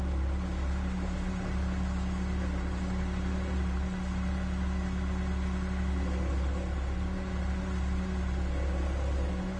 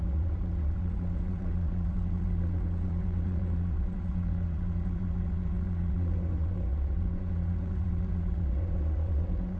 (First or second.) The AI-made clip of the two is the second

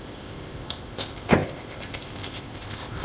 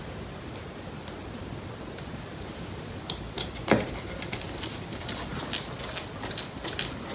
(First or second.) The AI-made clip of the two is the first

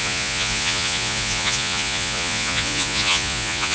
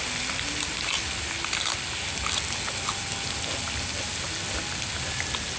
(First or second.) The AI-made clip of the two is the first